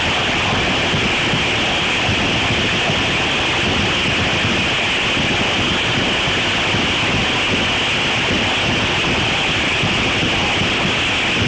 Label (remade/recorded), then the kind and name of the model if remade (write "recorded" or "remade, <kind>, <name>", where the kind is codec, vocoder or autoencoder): recorded